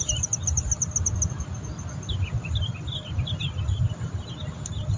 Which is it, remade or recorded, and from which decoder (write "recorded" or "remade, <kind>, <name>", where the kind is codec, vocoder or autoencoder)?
recorded